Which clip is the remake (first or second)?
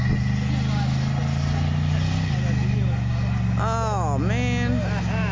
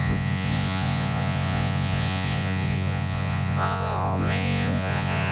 second